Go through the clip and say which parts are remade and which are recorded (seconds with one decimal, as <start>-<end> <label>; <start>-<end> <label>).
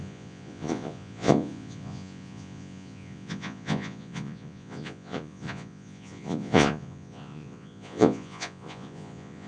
0.0-9.5 remade